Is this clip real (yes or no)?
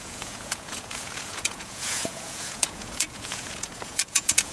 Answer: no